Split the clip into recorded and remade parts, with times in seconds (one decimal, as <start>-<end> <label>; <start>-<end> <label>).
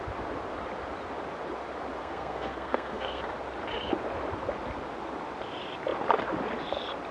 0.0-2.0 recorded; 2.0-3.2 remade; 3.2-7.1 recorded